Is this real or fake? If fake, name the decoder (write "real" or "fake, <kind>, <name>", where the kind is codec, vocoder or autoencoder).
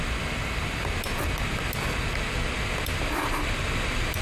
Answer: real